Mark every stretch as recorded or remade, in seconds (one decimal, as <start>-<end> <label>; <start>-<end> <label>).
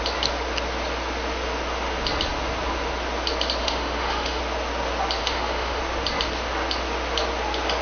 0.0-3.6 recorded; 3.6-4.4 remade; 4.4-5.2 recorded; 5.2-5.8 remade; 5.8-7.8 recorded